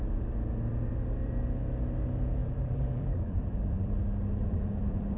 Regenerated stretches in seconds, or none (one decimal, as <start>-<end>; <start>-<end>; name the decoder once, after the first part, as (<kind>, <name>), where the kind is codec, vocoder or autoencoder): 2.4-3.9 (vocoder, BigVGAN v2); 4.4-5.2